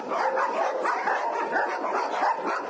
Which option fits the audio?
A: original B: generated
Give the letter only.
A